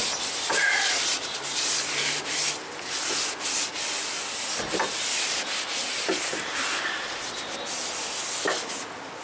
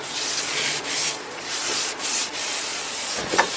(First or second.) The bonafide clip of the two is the first